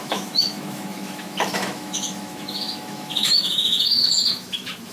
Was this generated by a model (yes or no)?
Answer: yes